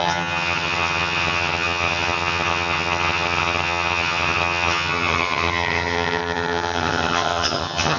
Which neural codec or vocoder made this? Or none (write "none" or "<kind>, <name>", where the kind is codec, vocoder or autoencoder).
vocoder, HiFi-GAN